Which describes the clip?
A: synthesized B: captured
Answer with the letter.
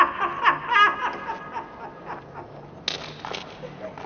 B